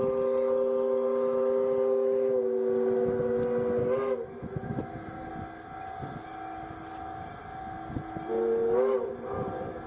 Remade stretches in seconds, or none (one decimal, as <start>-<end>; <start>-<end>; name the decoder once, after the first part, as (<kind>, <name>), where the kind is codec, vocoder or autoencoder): 3.8-5.3 (autoencoder, DAC-VAE)